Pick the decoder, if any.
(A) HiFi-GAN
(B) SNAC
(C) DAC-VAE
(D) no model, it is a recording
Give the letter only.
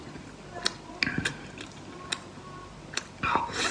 D